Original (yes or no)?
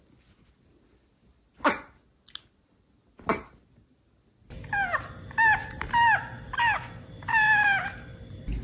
yes